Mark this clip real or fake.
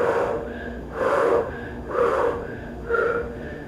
fake